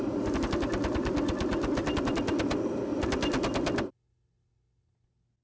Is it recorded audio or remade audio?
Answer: recorded